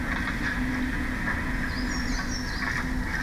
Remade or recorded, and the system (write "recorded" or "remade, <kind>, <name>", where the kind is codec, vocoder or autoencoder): recorded